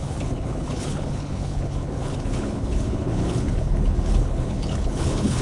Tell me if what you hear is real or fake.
fake